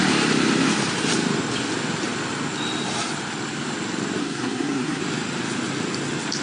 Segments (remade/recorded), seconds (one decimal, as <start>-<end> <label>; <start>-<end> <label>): 0.0-4.2 recorded; 4.2-5.0 remade; 5.0-6.4 recorded